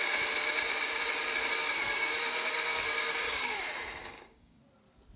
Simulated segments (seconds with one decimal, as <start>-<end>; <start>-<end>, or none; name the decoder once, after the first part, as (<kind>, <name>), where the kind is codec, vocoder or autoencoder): 1.6-3.6 (codec, DAC); 4.0-4.6